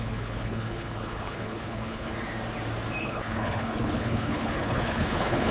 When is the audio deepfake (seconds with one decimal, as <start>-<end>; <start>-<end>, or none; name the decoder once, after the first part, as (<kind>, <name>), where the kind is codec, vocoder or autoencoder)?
0.0-2.1 (codec, HILCodec); 3.0-5.5